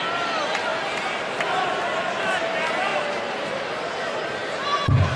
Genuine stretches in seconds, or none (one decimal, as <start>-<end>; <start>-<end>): 0.7-2.2; 4.4-5.2